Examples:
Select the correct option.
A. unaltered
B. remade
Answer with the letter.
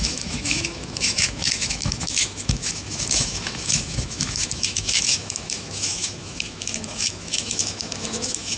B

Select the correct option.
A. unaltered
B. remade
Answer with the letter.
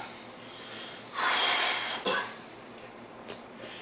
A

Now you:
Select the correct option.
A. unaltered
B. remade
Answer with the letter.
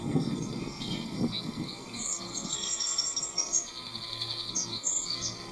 B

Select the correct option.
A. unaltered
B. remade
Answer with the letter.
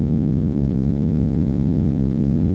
B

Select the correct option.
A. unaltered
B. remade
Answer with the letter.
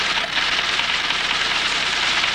A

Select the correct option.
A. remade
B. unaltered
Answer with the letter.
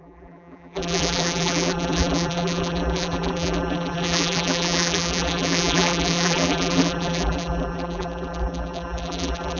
A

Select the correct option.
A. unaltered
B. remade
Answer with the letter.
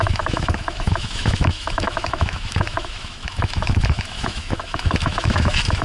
B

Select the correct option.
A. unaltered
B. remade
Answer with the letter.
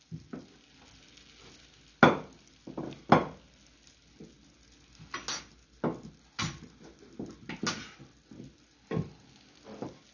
A